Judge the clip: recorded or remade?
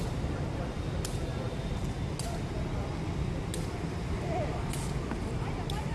recorded